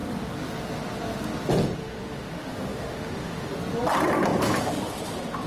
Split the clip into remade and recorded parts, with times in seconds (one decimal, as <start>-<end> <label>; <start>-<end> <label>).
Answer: 0.0-1.8 recorded; 1.8-3.5 remade; 3.5-5.5 recorded